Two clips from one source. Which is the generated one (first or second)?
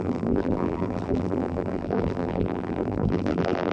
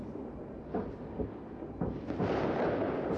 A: first